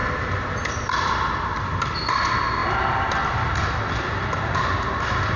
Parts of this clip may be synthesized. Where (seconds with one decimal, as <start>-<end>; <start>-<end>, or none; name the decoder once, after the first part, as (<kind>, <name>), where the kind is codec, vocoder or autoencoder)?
none